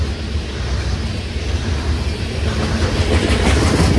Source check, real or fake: real